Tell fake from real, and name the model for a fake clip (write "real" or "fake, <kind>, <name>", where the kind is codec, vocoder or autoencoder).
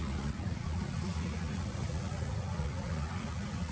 fake, vocoder, Vocos